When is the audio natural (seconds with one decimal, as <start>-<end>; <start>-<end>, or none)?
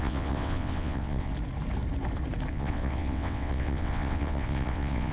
1.3-2.5